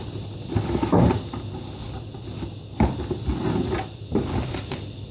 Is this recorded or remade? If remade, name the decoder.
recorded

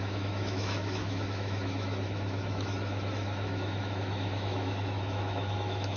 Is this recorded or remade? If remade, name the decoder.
remade, autoencoder, DAC-VAE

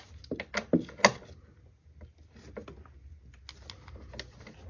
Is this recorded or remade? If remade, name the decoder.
recorded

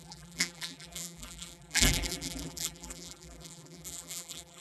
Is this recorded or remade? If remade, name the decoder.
remade, vocoder, BigVGAN v2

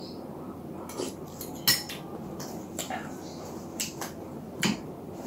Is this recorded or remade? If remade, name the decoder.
recorded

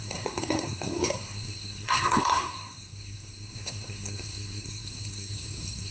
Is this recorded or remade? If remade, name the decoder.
remade, codec, SNAC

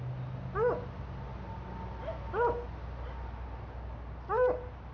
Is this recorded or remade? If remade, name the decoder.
recorded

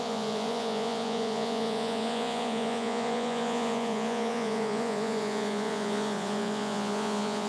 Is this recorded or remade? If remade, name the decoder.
remade, vocoder, Vocos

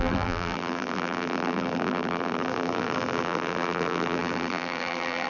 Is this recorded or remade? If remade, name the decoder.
remade, vocoder, BigVGAN v2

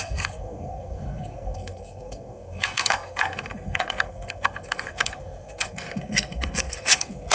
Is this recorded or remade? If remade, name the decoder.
remade, codec, SNAC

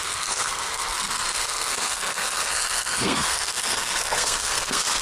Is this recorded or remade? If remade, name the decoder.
remade, codec, SNAC